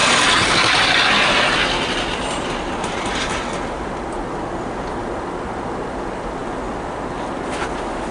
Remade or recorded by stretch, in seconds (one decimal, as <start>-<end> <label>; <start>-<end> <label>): 0.0-8.1 recorded

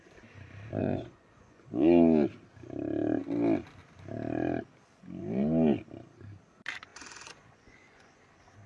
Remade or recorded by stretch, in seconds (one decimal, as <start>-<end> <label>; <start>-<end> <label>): 0.0-0.8 recorded; 0.8-1.6 remade; 1.6-6.9 recorded; 6.9-8.2 remade; 8.2-8.7 recorded

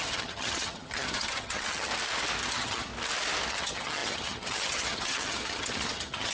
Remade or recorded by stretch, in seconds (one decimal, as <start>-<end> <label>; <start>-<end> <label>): 0.0-1.9 remade; 1.9-2.5 recorded; 2.5-2.9 remade; 2.9-3.5 recorded; 3.5-6.3 remade

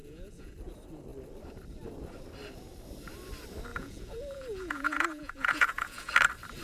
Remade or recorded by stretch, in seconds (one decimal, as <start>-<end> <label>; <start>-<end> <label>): 0.0-0.7 remade; 0.7-3.7 recorded; 3.7-6.1 remade; 6.1-6.6 recorded

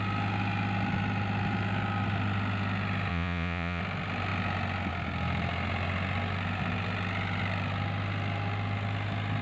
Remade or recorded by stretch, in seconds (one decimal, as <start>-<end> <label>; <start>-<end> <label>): 0.0-3.1 recorded; 3.1-3.8 remade; 3.8-9.4 recorded

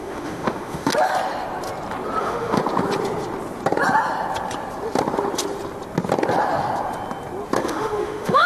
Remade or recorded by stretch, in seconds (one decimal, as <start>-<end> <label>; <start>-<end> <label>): 0.0-0.9 remade; 0.9-2.2 recorded; 2.2-2.6 remade; 2.6-7.6 recorded; 7.6-8.5 remade

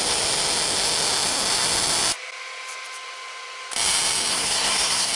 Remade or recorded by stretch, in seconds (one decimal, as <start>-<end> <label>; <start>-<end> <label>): 0.0-4.3 recorded; 4.3-5.1 remade